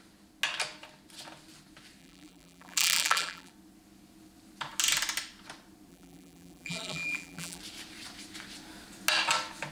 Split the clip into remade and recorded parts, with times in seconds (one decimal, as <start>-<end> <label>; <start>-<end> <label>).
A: 0.0-2.0 recorded; 2.0-3.5 remade; 3.5-5.9 recorded; 5.9-7.6 remade; 7.6-9.7 recorded